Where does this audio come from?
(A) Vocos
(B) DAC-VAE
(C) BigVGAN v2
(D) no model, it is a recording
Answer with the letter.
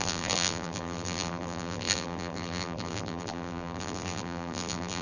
C